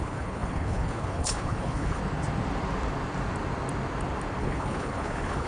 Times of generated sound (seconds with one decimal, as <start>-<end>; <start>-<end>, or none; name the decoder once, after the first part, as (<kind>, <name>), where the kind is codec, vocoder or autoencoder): 0.0-2.0 (codec, HILCodec); 4.4-5.5